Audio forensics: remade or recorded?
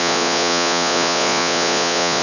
remade